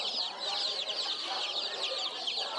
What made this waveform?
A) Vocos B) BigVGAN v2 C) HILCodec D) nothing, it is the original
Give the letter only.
B